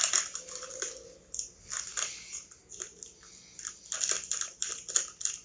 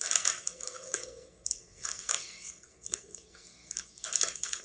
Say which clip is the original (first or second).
first